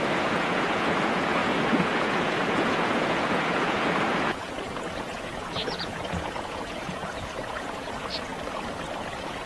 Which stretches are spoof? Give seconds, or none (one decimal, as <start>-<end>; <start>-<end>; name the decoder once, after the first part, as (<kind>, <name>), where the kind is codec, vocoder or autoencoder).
0.0-8.3 (vocoder, Vocos); 9.1-9.5